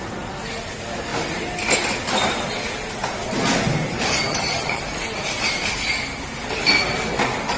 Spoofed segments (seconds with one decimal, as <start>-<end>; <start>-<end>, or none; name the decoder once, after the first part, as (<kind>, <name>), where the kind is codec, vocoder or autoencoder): 4.3-4.8 (vocoder, HiFi-GAN)